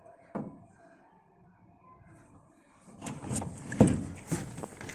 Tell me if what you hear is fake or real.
real